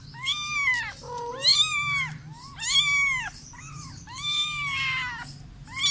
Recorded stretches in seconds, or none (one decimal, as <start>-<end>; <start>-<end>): 0.0-5.9